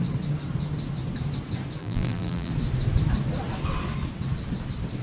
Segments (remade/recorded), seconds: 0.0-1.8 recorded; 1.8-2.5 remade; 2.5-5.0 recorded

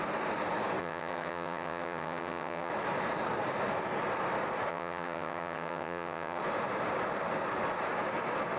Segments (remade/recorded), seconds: 0.0-0.8 recorded; 0.8-2.7 remade; 2.7-4.7 recorded; 4.7-6.4 remade; 6.4-8.6 recorded

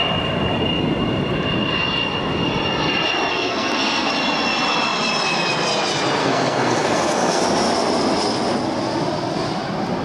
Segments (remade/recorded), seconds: 0.0-3.3 recorded; 3.3-4.1 remade; 4.1-6.2 recorded; 6.2-7.4 remade; 7.4-10.0 recorded

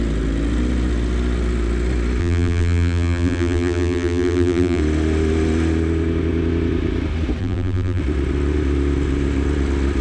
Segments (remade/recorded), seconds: 0.0-2.2 recorded; 2.2-4.8 remade; 4.8-7.4 recorded; 7.4-8.0 remade; 8.0-10.0 recorded

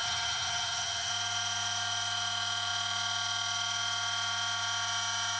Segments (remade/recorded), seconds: 0.0-1.1 remade; 1.1-5.4 recorded

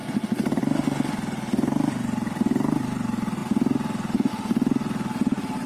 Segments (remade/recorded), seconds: 0.0-5.7 recorded